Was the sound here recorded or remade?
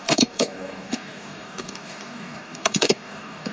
remade